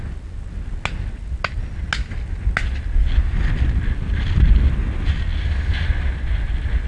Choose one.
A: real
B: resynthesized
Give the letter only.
A